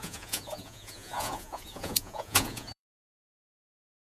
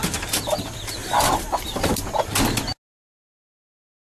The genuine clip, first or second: second